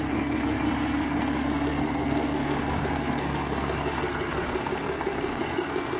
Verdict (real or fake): fake